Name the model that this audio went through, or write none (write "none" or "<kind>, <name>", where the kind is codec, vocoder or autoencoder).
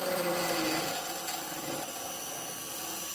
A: none